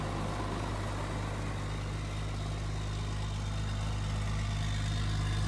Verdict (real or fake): real